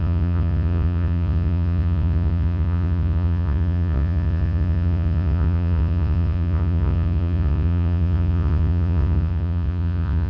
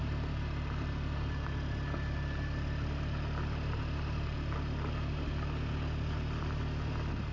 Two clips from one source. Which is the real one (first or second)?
second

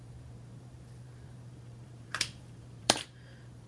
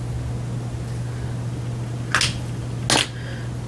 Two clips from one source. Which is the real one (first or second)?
second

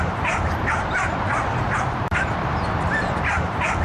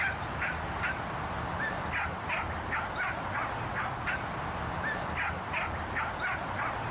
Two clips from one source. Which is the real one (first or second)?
second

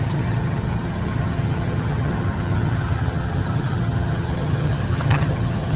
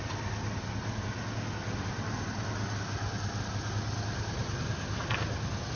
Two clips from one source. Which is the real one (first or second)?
second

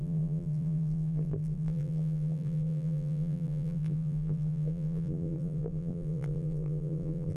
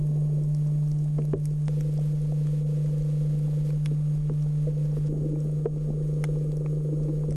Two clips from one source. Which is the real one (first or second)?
second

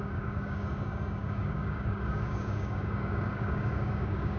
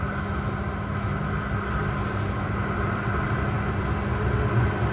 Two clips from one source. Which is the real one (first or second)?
second